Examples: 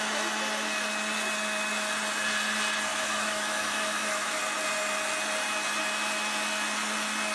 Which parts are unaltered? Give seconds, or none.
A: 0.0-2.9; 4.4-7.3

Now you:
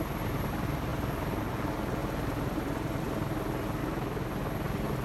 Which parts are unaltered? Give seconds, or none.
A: 0.0-3.8; 4.3-5.0